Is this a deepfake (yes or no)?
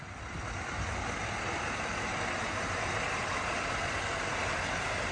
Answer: no